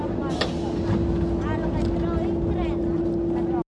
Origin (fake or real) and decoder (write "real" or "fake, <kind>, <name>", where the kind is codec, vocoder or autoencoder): real